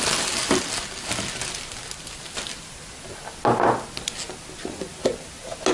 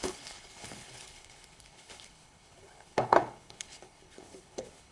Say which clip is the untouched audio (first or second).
first